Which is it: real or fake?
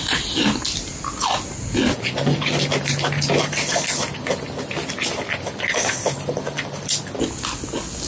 real